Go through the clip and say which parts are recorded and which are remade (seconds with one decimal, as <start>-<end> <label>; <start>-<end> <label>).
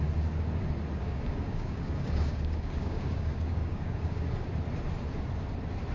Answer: 0.0-1.0 recorded; 1.0-4.5 remade; 4.5-5.9 recorded